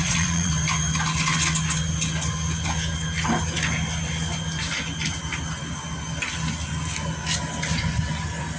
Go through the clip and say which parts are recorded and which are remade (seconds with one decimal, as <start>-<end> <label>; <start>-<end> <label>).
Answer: 0.0-0.5 remade; 0.5-8.6 recorded